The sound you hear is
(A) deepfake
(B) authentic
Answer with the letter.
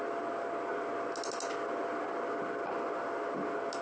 B